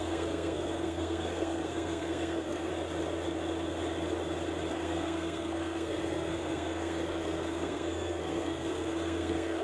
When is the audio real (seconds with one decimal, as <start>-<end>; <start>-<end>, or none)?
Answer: 2.7-4.7